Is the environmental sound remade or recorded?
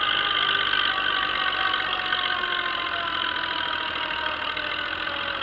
recorded